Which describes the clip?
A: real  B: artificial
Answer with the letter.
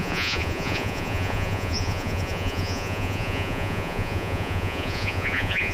B